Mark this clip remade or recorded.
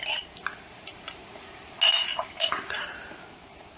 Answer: recorded